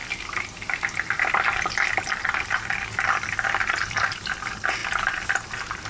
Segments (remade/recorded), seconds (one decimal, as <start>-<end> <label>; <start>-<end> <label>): 0.0-5.9 recorded